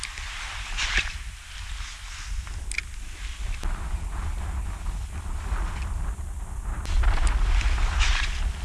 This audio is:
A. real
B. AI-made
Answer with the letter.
A